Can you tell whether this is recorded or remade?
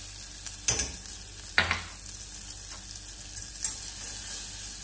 recorded